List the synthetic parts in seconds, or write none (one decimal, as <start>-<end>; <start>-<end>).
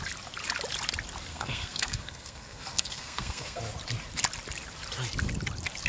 1.3-3.6